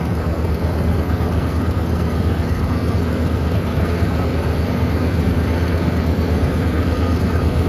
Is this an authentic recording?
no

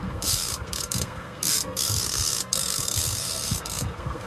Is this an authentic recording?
no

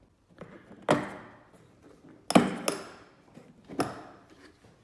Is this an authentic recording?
yes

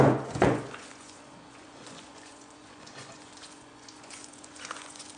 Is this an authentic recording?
no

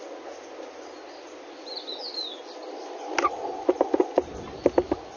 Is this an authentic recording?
yes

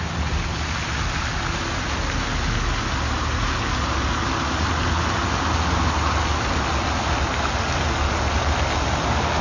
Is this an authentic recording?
yes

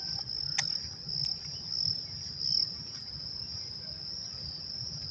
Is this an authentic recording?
yes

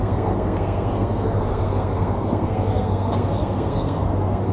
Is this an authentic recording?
no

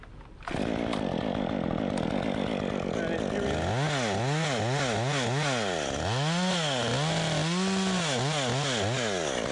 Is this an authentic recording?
yes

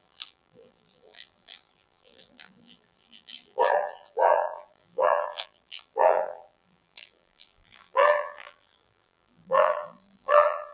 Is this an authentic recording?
no